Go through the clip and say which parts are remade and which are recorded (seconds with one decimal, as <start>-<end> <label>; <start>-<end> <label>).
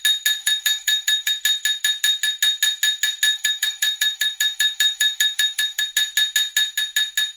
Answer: 0.0-0.4 recorded; 0.4-1.3 remade; 1.3-3.3 recorded; 3.3-5.8 remade; 5.8-7.4 recorded